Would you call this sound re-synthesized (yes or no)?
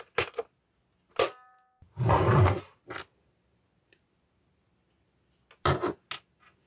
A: no